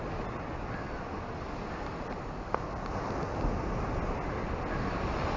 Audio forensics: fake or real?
real